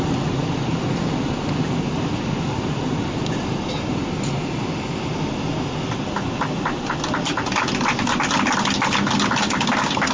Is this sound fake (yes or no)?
no